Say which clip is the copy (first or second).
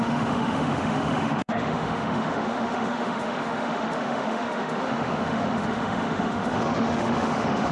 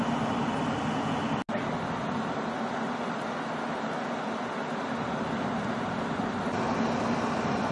first